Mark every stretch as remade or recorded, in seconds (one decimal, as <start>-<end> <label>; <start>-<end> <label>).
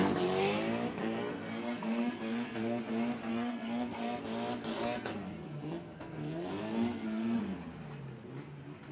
0.0-1.0 recorded; 1.0-2.8 remade; 2.8-3.3 recorded; 3.3-4.2 remade; 4.2-4.7 recorded; 4.7-7.4 remade; 7.4-8.9 recorded